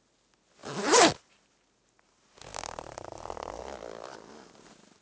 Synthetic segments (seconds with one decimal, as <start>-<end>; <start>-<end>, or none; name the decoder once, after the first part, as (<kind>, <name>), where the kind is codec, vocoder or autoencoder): none